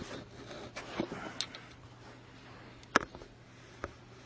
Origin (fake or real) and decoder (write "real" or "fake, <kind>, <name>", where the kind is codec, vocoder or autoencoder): real